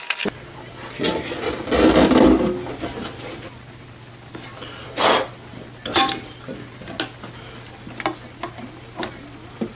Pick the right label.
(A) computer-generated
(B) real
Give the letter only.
B